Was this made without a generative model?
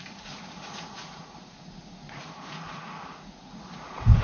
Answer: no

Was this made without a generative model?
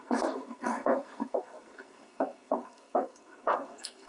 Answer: no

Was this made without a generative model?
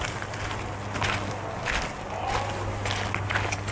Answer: yes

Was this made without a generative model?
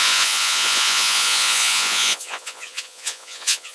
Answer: no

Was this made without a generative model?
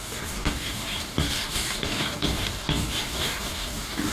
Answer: no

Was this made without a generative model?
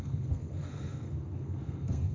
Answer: no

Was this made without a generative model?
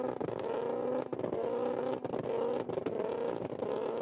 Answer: yes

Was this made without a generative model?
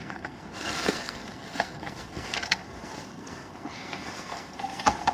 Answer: no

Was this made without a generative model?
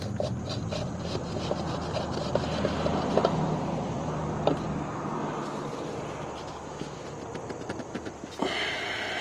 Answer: yes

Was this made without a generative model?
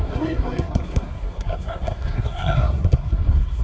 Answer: no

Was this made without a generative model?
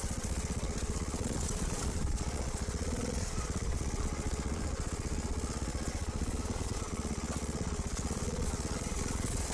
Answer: no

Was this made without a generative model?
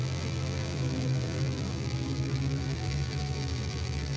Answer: no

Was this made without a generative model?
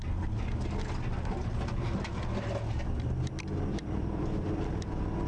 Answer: yes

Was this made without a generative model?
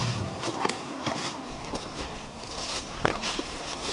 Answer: no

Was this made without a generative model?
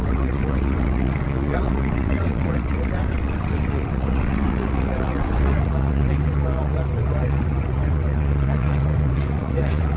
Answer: no